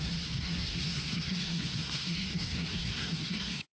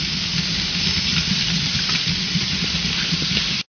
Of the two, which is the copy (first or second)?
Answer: first